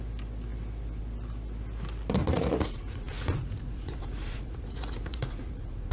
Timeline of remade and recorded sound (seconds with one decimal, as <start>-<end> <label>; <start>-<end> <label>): 0.0-2.2 recorded; 2.2-5.9 remade